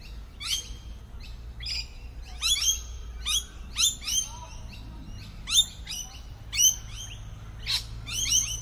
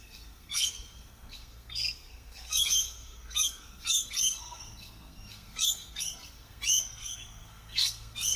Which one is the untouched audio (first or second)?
first